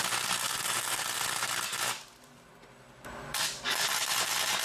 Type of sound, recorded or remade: recorded